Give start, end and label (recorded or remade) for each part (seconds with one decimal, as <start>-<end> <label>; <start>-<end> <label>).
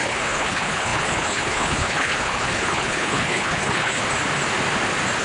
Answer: 0.0-4.0 remade; 4.0-5.2 recorded